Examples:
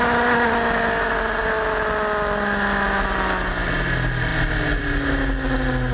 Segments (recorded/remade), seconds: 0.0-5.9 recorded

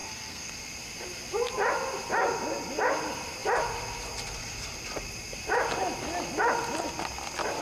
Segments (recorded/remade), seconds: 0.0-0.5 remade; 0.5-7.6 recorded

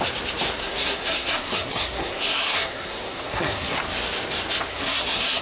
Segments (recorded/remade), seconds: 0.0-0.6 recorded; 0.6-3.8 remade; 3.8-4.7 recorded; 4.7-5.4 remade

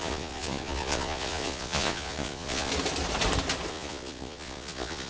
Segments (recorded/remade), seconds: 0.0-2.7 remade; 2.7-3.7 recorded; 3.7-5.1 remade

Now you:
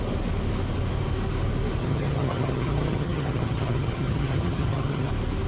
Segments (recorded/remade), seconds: 0.0-1.8 recorded; 1.8-5.1 remade; 5.1-5.5 recorded

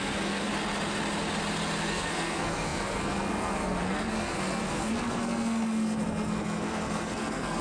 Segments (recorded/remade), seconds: 0.0-0.5 remade; 0.5-1.9 recorded; 1.9-7.6 remade